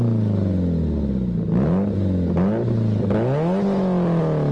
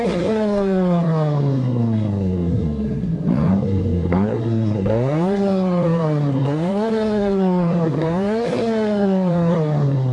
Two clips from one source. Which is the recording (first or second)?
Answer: first